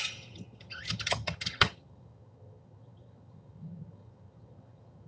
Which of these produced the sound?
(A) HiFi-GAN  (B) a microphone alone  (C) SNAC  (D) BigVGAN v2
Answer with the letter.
A